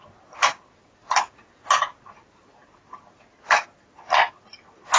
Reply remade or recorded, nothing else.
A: recorded